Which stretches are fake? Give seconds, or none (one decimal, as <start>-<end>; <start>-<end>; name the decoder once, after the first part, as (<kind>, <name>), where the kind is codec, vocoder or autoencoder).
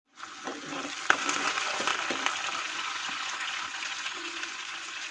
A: 0.0-0.5 (vocoder, Vocos); 1.2-1.9; 2.6-5.1